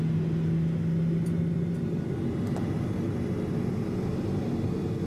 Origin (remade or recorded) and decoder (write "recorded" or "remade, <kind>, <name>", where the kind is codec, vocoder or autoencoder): recorded